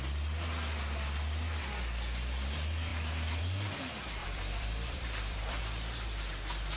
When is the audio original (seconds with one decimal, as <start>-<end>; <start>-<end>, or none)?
0.0-4.2; 5.6-6.8